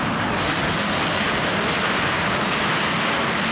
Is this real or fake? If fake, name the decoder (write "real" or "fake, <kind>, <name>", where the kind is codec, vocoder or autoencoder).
real